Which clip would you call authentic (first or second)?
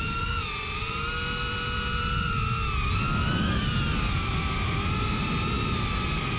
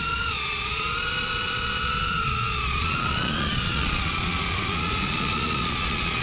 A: first